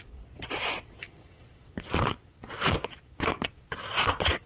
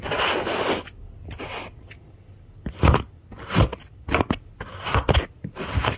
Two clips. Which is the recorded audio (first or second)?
second